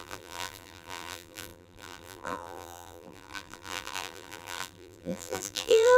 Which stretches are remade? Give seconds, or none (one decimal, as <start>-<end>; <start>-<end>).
0.0-6.0